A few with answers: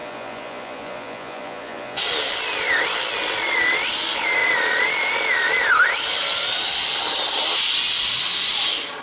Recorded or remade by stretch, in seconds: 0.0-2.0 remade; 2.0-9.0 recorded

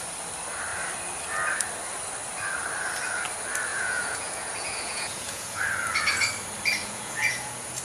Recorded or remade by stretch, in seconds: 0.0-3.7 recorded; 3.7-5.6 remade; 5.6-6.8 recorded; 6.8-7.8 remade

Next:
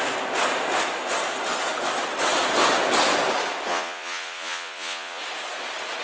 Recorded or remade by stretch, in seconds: 0.0-3.7 recorded; 3.7-5.2 remade; 5.2-6.0 recorded